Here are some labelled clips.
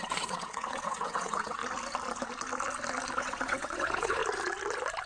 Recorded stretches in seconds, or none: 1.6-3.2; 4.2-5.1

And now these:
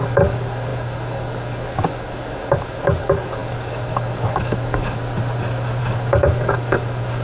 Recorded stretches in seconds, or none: 5.0-5.8

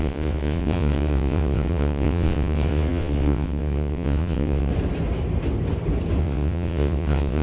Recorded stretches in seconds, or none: 4.7-6.2

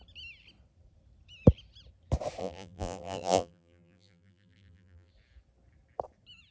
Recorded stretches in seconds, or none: 0.0-2.4; 5.1-6.5

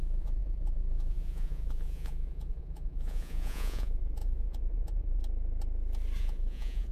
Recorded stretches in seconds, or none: 5.2-6.2